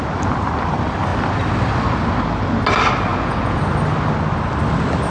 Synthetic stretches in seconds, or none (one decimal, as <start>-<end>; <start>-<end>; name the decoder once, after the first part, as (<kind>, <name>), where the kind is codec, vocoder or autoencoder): 3.1-3.6 (vocoder, Vocos)